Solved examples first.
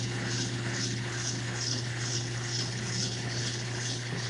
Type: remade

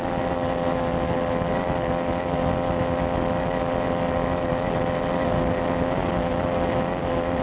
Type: recorded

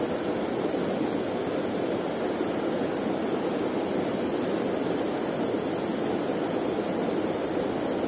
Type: recorded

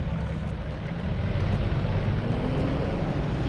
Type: recorded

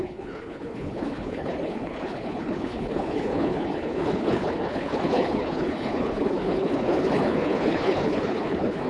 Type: remade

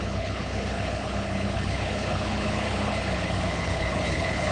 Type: remade